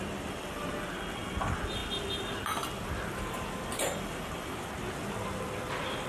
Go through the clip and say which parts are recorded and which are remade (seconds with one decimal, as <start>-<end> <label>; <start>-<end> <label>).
0.0-6.1 recorded